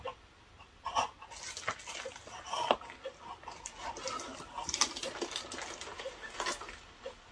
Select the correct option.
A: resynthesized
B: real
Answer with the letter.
B